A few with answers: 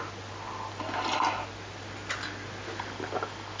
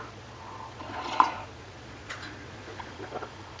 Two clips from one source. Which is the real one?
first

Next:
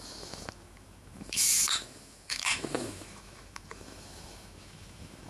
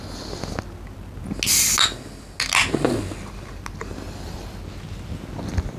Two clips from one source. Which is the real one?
second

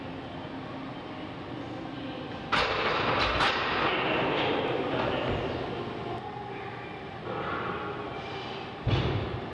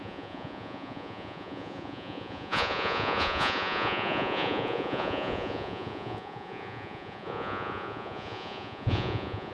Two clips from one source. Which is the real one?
first